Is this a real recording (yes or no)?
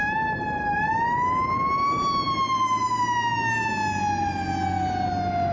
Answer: yes